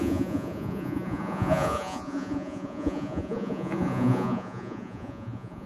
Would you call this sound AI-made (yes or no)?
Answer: yes